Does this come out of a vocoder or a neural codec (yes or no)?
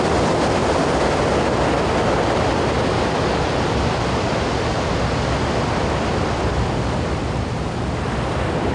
no